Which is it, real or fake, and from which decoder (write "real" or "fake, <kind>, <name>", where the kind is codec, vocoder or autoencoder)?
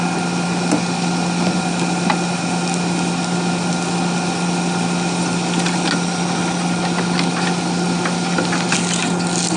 real